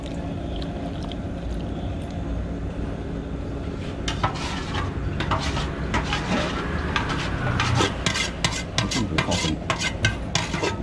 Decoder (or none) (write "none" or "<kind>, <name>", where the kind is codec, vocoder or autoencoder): none